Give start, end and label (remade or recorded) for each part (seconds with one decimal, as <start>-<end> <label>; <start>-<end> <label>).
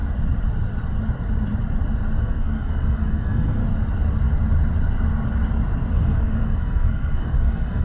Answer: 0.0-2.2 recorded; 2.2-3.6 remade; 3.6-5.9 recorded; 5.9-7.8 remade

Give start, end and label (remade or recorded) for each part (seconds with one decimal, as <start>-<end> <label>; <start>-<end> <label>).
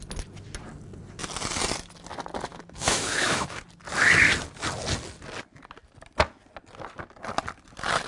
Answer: 0.0-2.5 recorded; 2.5-3.6 remade; 3.6-8.1 recorded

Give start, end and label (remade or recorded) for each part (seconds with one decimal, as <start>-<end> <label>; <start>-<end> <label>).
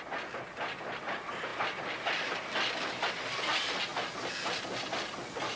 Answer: 0.0-5.6 recorded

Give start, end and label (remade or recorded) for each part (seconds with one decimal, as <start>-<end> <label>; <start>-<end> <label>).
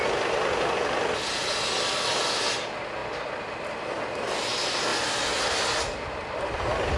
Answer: 0.0-7.0 recorded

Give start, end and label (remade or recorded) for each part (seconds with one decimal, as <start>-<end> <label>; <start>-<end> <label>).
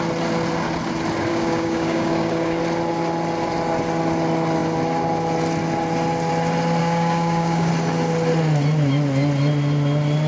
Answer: 0.0-1.3 recorded; 1.3-2.6 remade; 2.6-6.8 recorded; 6.8-7.7 remade; 7.7-10.3 recorded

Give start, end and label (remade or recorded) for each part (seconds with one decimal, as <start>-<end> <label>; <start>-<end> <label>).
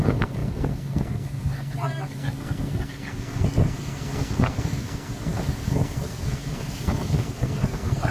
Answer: 0.0-8.1 remade